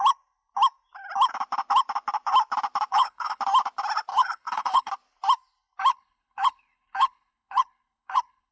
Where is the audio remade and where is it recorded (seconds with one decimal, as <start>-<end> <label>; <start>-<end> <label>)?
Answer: 0.0-2.9 recorded; 2.9-3.4 remade; 3.4-4.1 recorded; 4.1-4.9 remade; 4.9-5.9 recorded; 5.9-8.5 remade